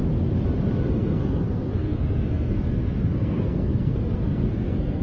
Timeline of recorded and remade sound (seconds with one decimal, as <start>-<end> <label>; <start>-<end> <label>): 0.0-0.9 recorded; 0.9-5.0 remade

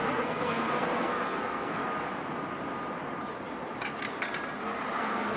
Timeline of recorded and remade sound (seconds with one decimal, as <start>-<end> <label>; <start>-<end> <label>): 0.0-1.8 remade; 1.8-5.0 recorded; 5.0-5.4 remade

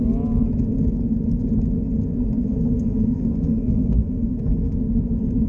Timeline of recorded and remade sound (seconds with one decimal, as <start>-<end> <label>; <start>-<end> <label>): 0.0-2.4 recorded; 2.4-4.7 remade; 4.7-5.5 recorded

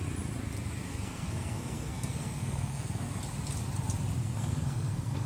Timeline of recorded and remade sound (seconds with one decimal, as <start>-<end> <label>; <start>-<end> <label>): 0.0-0.9 recorded; 0.9-3.2 remade; 3.2-4.2 recorded; 4.2-5.3 remade

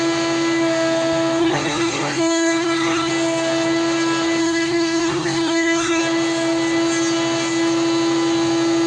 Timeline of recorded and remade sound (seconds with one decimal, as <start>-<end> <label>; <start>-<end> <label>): 0.0-1.4 recorded; 1.4-3.1 remade; 3.1-4.4 recorded; 4.4-6.0 remade; 6.0-8.9 recorded

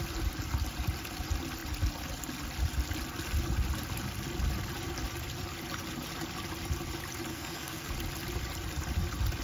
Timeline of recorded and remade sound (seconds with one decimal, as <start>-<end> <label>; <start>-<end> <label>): 0.0-7.3 recorded; 7.3-7.9 remade; 7.9-9.4 recorded